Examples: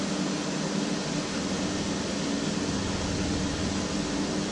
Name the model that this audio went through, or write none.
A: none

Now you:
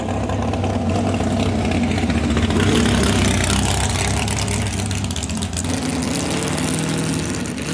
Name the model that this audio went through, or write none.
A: none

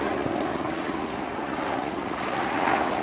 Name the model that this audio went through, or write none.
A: vocoder, Vocos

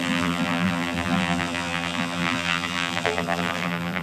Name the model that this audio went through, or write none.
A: vocoder, BigVGAN v2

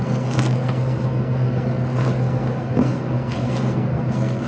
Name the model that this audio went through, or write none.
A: codec, SNAC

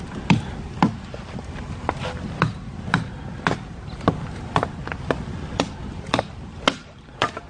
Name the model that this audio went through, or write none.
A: none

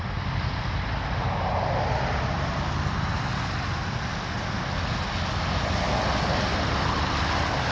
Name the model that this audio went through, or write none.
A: none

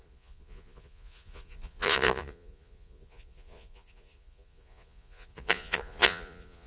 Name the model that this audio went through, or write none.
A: vocoder, Vocos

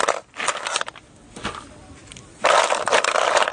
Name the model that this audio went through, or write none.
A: none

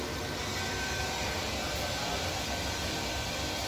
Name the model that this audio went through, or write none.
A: none